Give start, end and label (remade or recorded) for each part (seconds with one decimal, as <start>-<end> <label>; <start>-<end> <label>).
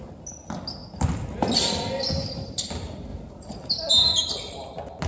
0.0-5.1 recorded